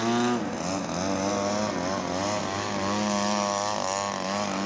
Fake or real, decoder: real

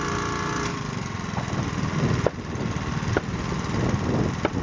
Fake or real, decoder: real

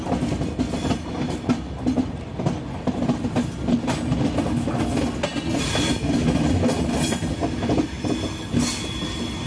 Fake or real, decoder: real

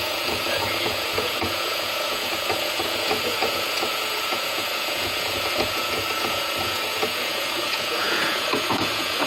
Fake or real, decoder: fake, vocoder, Vocos